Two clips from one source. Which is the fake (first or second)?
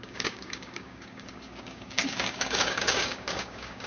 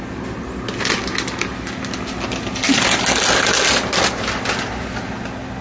first